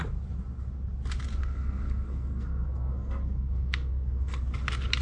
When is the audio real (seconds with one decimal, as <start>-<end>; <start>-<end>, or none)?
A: 0.0-1.4; 4.4-5.0